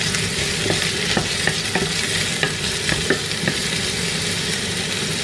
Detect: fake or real real